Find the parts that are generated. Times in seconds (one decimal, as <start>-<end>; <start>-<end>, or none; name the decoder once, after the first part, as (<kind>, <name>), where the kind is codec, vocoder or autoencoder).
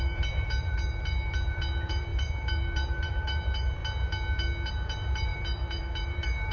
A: 0.0-3.8 (vocoder, BigVGAN v2); 4.7-6.5